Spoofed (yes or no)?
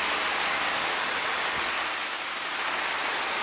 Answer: no